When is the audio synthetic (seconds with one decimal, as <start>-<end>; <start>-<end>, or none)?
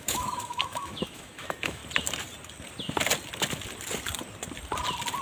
0.0-1.8